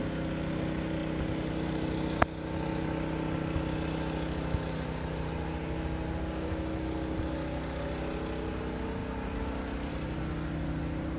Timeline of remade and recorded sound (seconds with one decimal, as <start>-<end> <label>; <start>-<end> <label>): 0.0-11.2 recorded